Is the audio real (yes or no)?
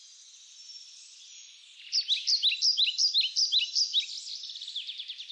yes